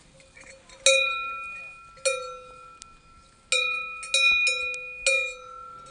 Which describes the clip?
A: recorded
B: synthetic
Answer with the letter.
A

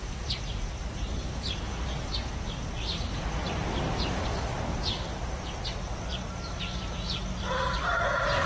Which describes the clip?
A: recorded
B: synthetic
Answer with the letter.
B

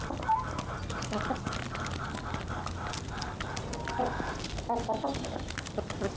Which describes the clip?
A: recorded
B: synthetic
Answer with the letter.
A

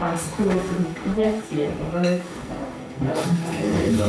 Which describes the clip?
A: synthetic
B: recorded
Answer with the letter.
A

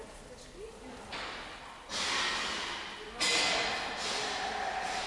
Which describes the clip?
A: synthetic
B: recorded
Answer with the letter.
B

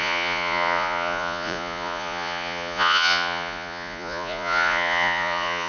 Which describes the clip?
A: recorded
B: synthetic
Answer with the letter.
B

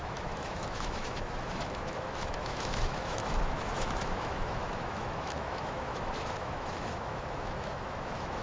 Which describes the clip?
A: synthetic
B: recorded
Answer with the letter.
A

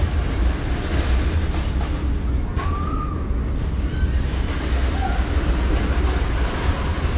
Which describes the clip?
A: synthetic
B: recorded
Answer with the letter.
B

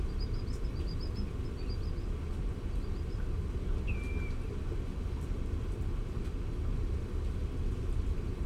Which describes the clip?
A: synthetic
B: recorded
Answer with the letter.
B